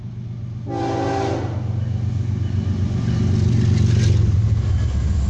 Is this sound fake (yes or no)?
no